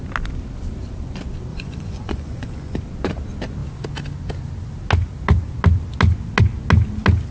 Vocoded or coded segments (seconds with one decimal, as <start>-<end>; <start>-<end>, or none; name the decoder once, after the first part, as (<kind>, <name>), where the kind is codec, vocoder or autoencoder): 1.5-2.8 (vocoder, Vocos)